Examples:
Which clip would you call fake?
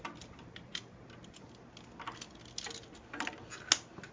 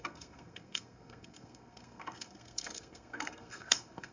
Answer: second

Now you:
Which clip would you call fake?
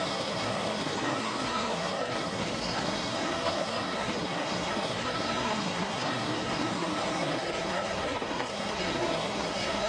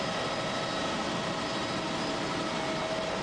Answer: first